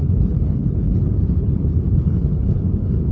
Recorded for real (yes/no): no